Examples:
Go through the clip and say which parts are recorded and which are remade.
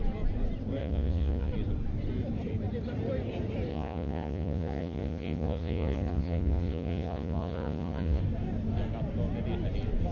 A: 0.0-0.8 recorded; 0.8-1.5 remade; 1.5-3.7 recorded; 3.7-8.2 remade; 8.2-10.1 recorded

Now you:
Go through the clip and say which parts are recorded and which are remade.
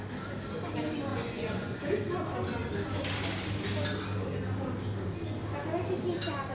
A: 0.0-1.1 recorded; 1.1-1.9 remade; 1.9-6.5 recorded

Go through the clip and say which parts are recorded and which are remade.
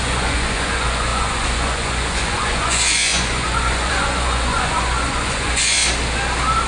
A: 0.0-5.8 remade; 5.8-6.7 recorded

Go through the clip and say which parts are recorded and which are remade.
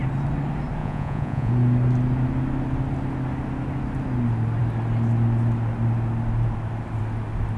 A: 0.0-0.8 recorded; 0.8-1.5 remade; 1.5-7.6 recorded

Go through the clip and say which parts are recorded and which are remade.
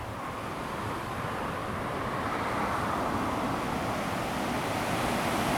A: 0.0-5.6 recorded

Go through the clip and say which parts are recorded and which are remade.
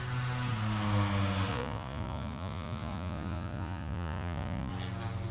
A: 0.0-1.5 recorded; 1.5-4.7 remade; 4.7-5.3 recorded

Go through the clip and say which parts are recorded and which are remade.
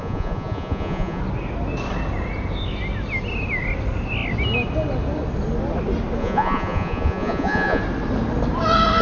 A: 0.0-1.2 remade; 1.2-6.2 recorded; 6.2-7.8 remade; 7.8-9.0 recorded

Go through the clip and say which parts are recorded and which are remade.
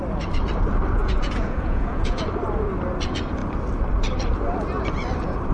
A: 0.0-1.0 recorded; 1.0-2.2 remade; 2.2-5.5 recorded